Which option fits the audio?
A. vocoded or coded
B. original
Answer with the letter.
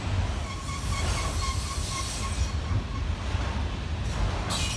B